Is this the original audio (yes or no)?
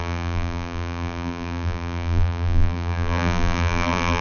no